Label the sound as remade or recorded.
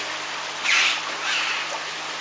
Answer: recorded